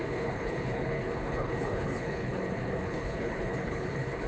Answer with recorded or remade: remade